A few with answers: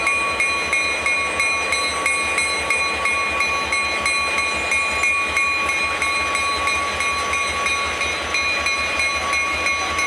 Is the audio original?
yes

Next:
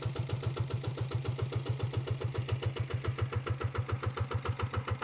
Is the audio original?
yes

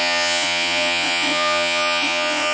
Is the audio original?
no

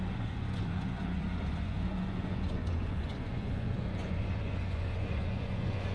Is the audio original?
no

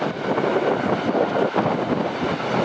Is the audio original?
yes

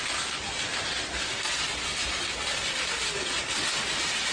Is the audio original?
yes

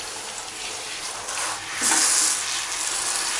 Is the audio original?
yes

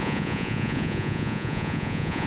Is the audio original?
no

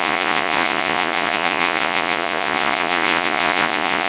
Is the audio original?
no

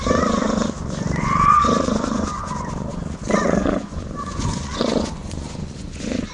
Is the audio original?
no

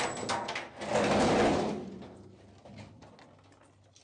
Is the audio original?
yes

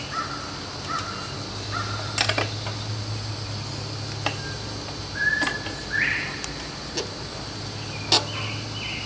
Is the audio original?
yes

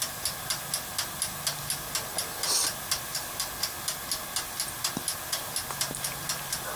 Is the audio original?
yes